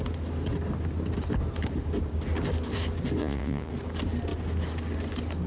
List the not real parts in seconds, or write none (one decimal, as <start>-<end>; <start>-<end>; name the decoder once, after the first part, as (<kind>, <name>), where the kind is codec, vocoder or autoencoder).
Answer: 3.2-3.7 (vocoder, Vocos)